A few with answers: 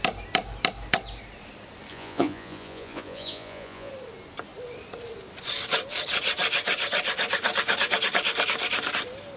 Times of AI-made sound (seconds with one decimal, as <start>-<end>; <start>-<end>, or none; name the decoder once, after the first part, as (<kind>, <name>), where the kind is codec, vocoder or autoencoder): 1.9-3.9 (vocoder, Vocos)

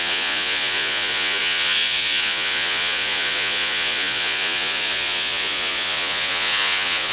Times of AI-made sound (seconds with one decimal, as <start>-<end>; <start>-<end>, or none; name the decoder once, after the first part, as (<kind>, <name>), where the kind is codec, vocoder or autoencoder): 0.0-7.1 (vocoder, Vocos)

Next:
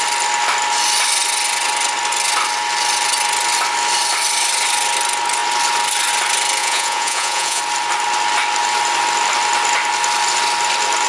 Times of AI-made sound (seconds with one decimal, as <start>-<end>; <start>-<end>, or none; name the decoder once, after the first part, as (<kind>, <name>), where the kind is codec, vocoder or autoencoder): 6.6-7.6 (vocoder, Vocos)

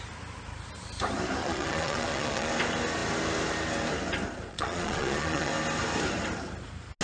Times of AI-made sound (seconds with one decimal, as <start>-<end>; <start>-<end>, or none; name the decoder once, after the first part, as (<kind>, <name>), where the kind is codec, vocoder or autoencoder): 1.4-2.5 (vocoder, Vocos); 4.5-5.5

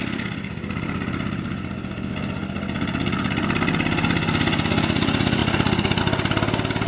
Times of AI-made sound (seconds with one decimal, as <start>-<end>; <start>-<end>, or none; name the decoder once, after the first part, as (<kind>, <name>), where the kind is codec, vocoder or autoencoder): none

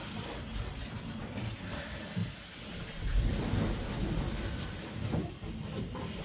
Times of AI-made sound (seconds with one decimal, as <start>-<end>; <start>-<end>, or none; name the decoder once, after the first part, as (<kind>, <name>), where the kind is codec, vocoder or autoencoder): none